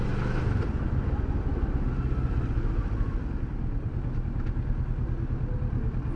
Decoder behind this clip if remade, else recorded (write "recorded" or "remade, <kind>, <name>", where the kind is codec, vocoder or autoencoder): recorded